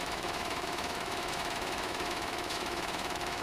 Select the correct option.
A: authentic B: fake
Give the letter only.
B